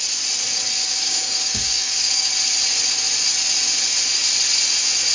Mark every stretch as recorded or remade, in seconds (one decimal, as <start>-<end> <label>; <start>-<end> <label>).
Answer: 0.0-0.9 recorded; 0.9-2.3 remade; 2.3-5.1 recorded